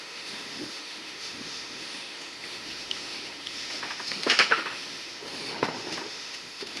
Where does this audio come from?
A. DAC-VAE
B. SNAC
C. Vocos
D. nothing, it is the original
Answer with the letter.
A